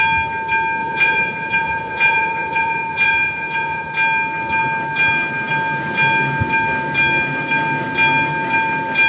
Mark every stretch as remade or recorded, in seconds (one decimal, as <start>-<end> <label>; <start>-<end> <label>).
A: 0.0-0.8 recorded; 0.8-3.9 remade; 3.9-9.1 recorded